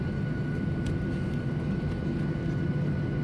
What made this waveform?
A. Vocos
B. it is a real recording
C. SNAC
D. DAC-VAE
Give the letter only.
B